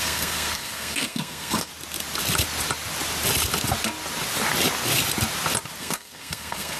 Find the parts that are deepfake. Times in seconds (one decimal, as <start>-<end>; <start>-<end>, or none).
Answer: 0.0-1.7; 5.8-6.8